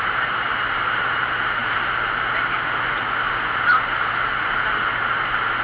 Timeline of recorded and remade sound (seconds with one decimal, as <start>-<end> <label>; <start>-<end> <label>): 0.0-5.6 recorded